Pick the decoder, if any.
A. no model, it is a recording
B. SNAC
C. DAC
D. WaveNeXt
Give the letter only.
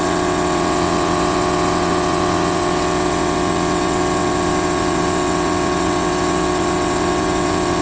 D